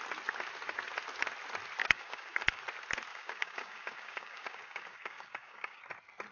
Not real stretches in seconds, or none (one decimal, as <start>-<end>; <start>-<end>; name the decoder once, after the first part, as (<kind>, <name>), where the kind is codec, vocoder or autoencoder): 1.8-2.6 (codec, DAC); 3.1-5.8